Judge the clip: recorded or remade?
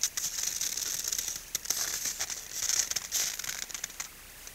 recorded